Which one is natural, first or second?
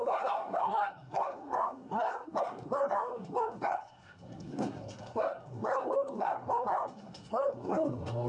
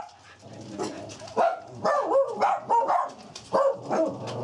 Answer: second